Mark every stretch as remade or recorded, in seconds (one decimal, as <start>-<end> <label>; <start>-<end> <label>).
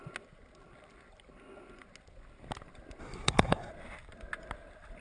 0.0-3.0 recorded; 3.0-3.7 remade; 3.7-5.0 recorded